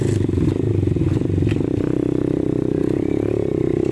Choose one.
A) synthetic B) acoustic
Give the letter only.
B